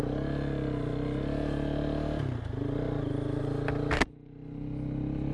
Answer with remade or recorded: recorded